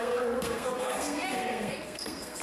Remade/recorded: remade